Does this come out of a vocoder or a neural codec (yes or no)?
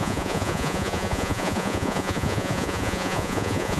yes